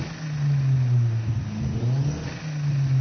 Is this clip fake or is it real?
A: real